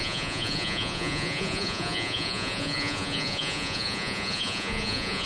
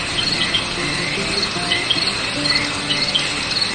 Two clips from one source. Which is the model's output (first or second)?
first